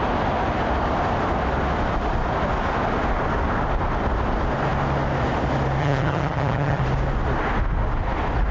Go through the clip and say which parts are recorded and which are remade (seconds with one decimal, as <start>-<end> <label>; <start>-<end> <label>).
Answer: 0.0-5.8 recorded; 5.8-6.8 remade; 6.8-8.5 recorded